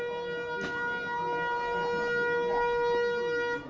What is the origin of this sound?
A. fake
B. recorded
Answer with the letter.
B